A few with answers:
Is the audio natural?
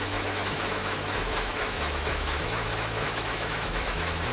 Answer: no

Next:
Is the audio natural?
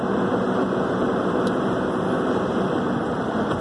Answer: no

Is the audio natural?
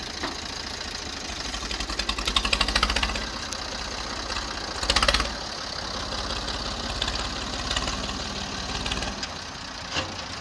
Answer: yes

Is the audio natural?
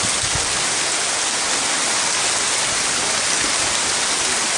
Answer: yes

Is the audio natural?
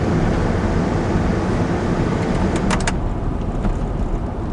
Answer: yes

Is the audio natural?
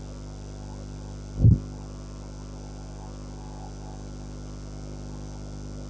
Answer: yes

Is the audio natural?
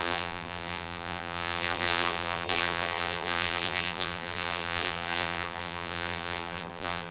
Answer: no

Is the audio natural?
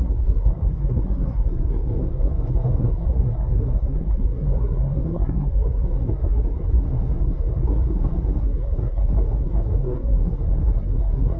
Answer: no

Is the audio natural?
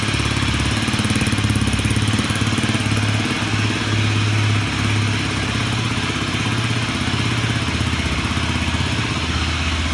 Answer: yes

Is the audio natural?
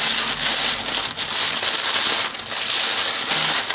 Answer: yes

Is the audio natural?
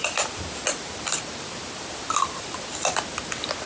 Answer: yes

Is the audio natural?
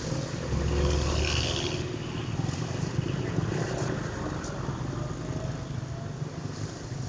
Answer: yes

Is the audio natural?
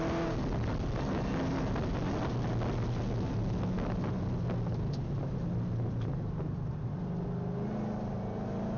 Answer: yes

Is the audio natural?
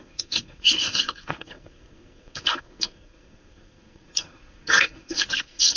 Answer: no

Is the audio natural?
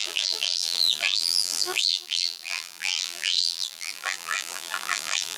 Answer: no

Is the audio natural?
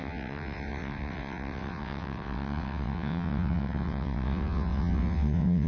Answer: no